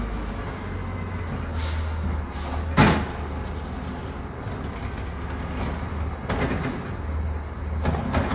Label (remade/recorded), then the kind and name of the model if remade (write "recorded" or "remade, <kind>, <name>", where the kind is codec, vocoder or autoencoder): recorded